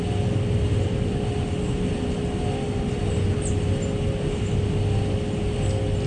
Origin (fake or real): real